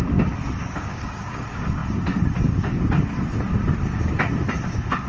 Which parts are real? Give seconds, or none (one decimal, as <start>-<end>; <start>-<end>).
0.0-0.6; 1.4-5.1